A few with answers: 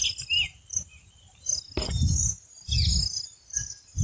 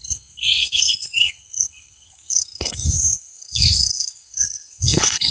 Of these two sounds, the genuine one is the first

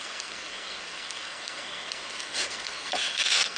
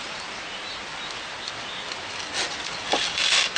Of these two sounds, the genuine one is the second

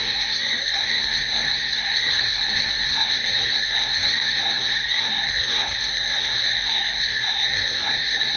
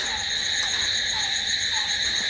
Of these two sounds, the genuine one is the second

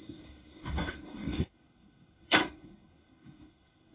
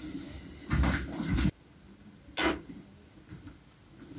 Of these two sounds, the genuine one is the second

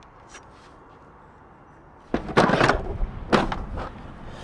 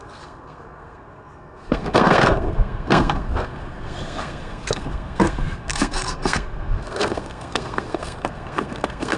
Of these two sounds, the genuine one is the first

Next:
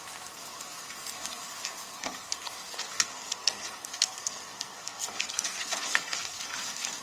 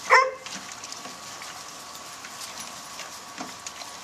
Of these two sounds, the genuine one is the second